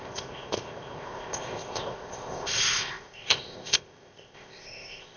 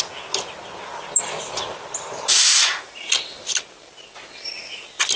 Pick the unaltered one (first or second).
second